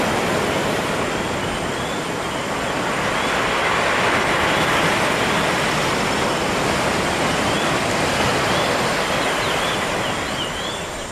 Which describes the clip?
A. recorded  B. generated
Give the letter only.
A